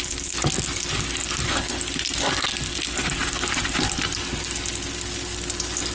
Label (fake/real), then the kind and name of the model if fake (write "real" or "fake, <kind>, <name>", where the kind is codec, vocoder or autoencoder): real